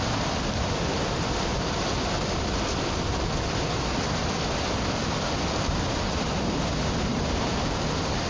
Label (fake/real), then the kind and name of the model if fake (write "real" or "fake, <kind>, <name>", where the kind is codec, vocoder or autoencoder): real